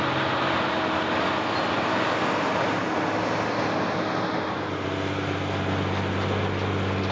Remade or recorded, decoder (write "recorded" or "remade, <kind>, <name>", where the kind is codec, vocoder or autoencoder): recorded